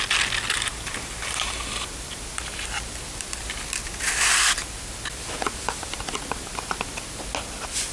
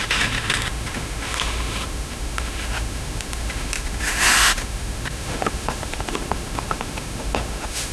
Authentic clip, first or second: first